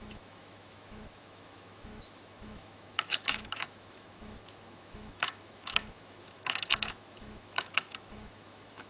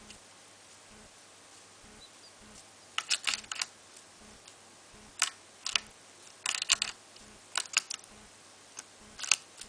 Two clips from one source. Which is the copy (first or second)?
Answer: first